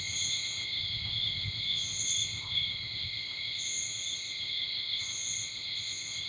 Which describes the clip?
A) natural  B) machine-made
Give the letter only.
B